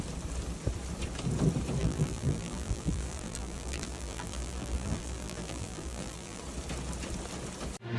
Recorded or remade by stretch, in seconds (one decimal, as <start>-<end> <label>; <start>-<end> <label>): 0.0-1.8 recorded; 1.8-6.4 remade; 6.4-8.0 recorded